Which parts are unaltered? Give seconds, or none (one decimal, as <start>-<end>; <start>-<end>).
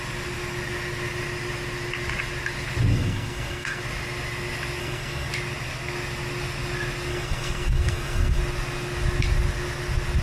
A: 0.0-2.9; 3.8-4.8; 5.3-7.1; 8.4-10.2